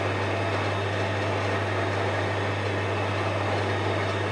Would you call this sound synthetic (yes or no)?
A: no